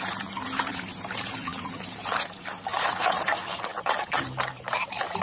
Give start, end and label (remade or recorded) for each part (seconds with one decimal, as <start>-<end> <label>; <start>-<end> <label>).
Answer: 0.0-5.2 remade